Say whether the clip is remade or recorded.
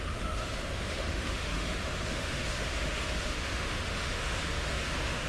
remade